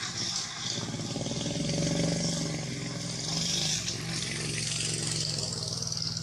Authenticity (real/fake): real